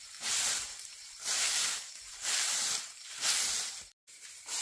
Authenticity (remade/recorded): remade